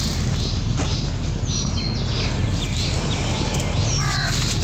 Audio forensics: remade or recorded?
recorded